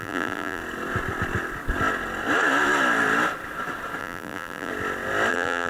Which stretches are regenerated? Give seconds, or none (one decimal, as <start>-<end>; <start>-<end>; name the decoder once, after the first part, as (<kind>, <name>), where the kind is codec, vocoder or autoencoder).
0.0-0.6 (vocoder, BigVGAN v2); 4.0-4.7; 5.3-5.7